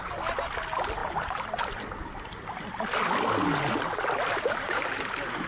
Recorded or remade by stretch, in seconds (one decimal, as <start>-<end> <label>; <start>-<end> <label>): 0.0-5.5 recorded